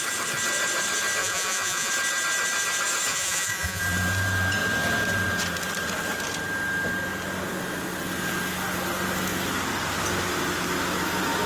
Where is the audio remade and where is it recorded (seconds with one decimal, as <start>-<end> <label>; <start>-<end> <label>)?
0.0-1.2 recorded; 1.2-1.9 remade; 1.9-3.1 recorded; 3.1-3.8 remade; 3.8-11.5 recorded

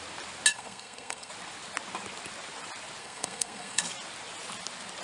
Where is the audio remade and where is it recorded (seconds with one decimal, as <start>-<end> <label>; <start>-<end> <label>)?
0.0-0.5 recorded; 0.5-1.3 remade; 1.3-3.0 recorded; 3.0-3.8 remade; 3.8-5.0 recorded

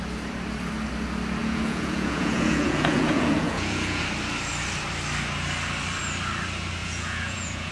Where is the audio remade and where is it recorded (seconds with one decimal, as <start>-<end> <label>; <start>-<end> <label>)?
0.0-1.4 recorded; 1.4-4.0 remade; 4.0-6.8 recorded; 6.8-7.7 remade

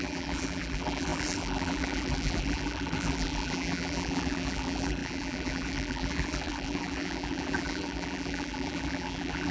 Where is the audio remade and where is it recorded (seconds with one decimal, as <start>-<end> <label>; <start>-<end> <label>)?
0.0-9.5 remade